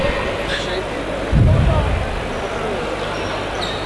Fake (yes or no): no